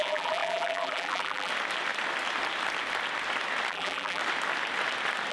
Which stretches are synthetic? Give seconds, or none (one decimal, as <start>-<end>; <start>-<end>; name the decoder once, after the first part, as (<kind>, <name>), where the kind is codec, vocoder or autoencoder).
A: 0.0-1.5 (vocoder, BigVGAN v2); 3.7-4.2